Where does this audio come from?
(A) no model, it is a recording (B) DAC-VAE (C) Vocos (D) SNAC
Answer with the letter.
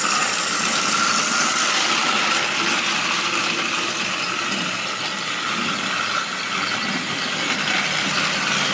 A